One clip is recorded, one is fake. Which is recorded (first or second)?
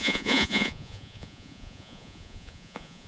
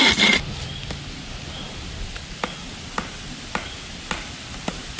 second